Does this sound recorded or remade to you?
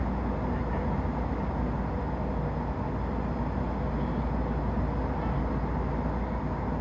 recorded